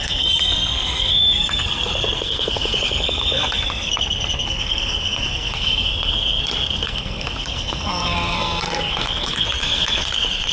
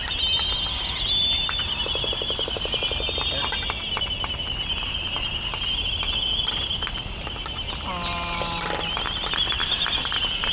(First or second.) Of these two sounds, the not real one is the first